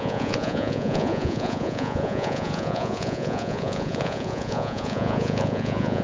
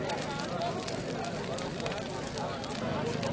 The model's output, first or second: first